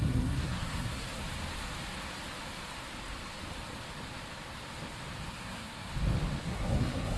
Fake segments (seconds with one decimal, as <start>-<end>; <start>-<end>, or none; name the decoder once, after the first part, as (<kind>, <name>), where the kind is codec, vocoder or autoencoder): 0.0-1.2 (codec, SNAC); 5.3-5.9; 6.4-7.2